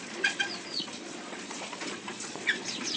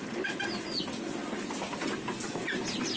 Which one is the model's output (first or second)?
first